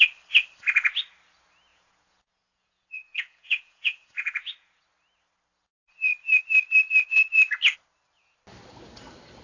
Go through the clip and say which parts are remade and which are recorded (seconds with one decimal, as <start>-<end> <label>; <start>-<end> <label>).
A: 0.0-1.7 recorded; 1.7-4.8 remade; 4.8-9.4 recorded

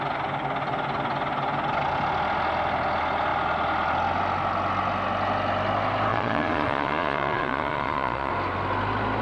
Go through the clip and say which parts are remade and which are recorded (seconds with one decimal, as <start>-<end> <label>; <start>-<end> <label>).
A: 0.0-6.1 recorded; 6.1-8.3 remade; 8.3-9.2 recorded

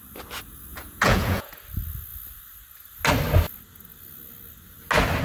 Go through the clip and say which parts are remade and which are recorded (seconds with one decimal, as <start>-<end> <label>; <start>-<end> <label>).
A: 0.0-0.7 recorded; 0.7-1.6 remade; 1.6-5.2 recorded

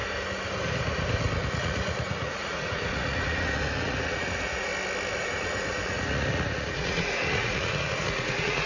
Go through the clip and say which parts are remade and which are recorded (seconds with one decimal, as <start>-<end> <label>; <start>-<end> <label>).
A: 0.0-1.5 recorded; 1.5-4.7 remade; 4.7-5.2 recorded; 5.2-8.7 remade